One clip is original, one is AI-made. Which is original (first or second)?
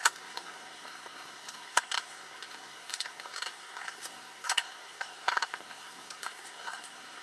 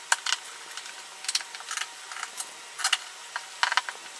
second